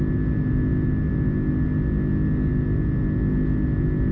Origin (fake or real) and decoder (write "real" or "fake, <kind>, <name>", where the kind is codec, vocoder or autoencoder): real